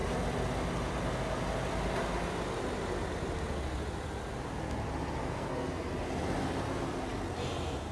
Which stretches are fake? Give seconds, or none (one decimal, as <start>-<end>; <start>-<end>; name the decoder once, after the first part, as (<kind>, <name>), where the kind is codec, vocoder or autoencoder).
5.2-5.8 (codec, SNAC)

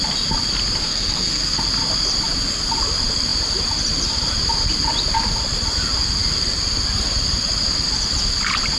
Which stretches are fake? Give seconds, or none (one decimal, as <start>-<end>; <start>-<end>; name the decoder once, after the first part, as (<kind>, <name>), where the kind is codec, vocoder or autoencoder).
0.8-1.6 (codec, SNAC)

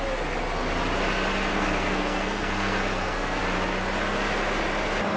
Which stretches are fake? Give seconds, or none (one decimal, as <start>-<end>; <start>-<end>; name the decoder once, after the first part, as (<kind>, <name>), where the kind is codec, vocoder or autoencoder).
1.5-3.4 (codec, SNAC)